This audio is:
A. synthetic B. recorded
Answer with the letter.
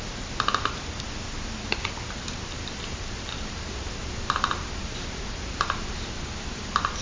A